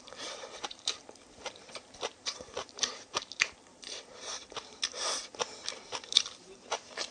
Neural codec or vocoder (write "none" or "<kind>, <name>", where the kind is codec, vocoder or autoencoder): vocoder, BigVGAN v2